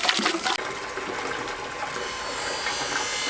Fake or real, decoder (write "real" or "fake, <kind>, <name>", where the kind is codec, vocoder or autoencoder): real